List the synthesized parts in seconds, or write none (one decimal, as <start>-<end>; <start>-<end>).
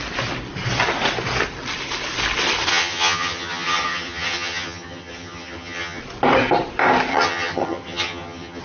2.7-6.0; 7.1-8.6